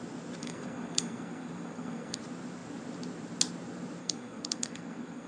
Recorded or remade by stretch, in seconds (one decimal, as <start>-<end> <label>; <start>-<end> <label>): 0.0-0.4 recorded; 0.4-2.2 remade; 2.2-4.0 recorded; 4.0-5.3 remade